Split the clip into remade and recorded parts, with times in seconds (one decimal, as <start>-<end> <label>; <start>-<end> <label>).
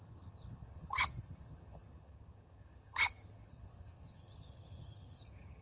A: 0.0-5.6 remade